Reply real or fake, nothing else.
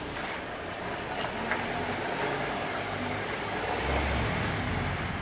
real